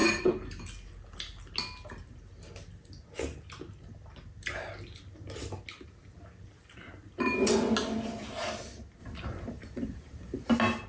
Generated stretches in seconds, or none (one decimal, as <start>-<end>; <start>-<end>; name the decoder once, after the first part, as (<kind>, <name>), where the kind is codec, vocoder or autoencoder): 9.0-10.5 (vocoder, BigVGAN v2)